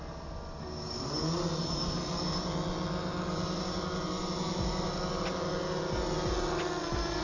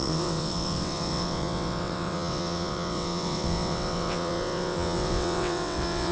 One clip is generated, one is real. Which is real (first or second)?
first